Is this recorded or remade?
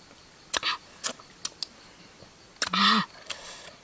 recorded